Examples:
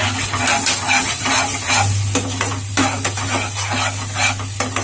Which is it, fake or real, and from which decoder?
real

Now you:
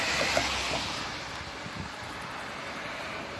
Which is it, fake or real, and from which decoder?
real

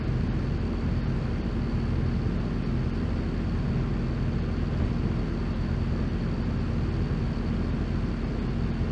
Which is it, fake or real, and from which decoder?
real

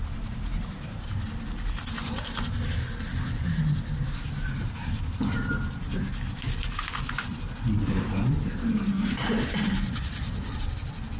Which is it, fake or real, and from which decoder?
real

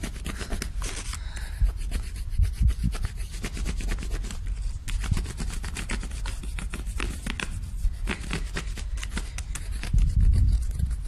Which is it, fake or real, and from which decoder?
real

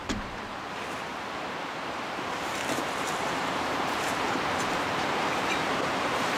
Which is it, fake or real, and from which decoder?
fake, vocoder, BigVGAN v2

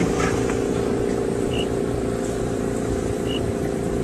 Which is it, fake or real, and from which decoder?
fake, vocoder, BigVGAN v2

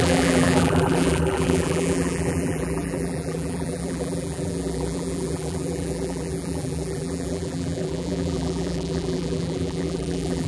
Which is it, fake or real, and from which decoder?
fake, vocoder, BigVGAN v2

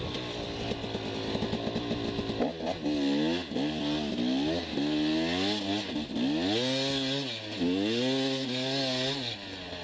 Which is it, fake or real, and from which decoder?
real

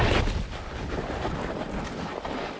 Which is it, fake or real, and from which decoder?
real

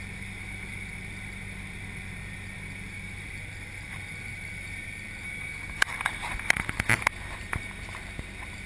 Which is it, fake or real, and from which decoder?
fake, vocoder, BigVGAN v2